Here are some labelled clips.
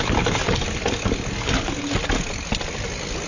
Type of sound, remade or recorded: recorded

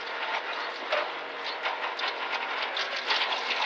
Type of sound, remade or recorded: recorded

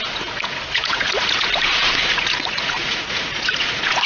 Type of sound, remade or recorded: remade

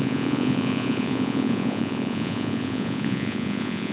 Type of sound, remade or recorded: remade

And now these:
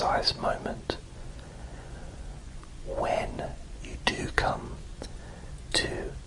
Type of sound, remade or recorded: remade